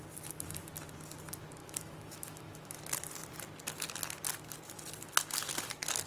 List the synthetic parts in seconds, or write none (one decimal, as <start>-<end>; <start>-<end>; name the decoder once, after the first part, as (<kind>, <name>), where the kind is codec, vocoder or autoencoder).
1.6-2.8 (autoencoder, DAC-VAE)